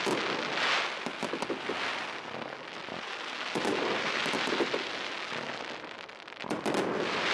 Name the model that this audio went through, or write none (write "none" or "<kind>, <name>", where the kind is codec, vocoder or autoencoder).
none